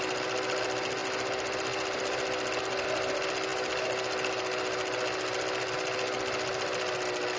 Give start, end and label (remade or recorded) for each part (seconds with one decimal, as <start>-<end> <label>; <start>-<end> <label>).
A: 0.0-7.4 recorded